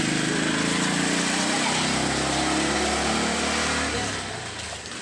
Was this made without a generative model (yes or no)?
yes